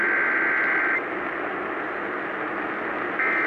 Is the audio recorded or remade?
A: recorded